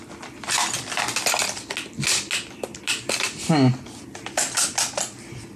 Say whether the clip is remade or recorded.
recorded